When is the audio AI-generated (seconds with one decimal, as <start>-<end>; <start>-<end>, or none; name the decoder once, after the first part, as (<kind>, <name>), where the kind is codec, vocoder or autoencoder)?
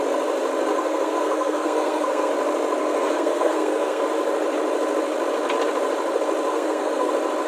0.7-2.3 (codec, SNAC); 2.8-4.0; 6.5-7.1